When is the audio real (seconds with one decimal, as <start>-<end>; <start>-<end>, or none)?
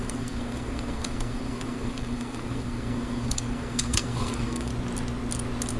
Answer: 4.7-5.8